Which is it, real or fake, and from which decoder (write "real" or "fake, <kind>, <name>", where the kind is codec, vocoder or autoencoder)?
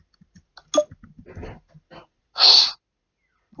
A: real